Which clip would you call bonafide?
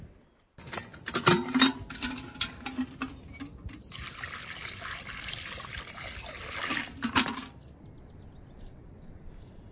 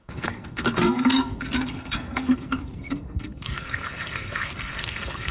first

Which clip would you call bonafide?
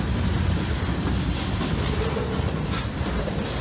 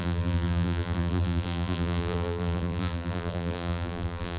first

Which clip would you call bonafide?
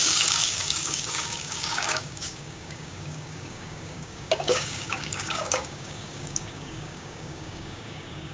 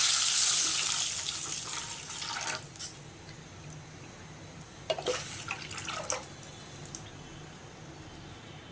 second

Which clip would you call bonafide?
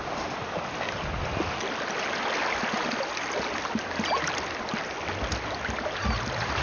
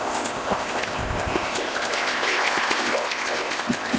first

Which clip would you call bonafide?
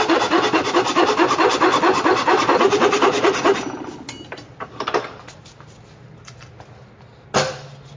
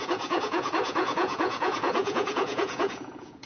first